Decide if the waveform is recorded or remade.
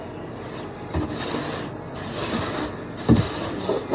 recorded